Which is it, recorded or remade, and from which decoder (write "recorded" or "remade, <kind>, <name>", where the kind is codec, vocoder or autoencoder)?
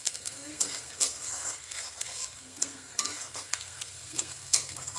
remade, codec, SNAC